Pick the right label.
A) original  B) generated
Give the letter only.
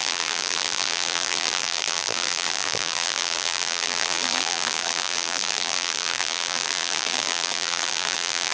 B